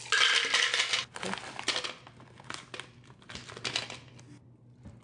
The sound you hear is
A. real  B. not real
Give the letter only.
A